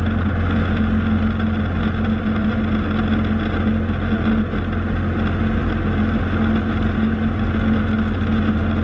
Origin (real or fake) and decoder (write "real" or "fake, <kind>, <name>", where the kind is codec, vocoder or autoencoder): real